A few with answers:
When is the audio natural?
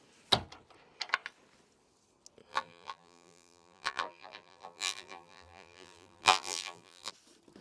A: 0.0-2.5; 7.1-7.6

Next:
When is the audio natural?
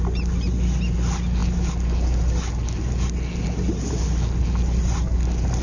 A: 0.0-5.6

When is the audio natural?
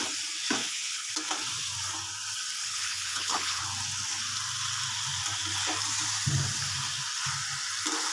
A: 0.0-0.6; 1.1-2.6; 3.6-8.1